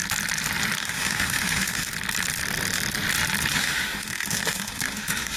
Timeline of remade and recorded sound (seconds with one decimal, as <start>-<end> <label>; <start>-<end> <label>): 0.0-0.8 recorded; 0.8-1.9 remade; 1.9-3.5 recorded; 3.5-5.4 remade